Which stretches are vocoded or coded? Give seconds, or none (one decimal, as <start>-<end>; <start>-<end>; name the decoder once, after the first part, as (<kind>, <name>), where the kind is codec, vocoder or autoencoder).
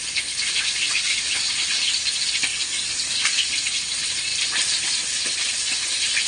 0.9-1.4 (codec, DAC); 2.5-3.5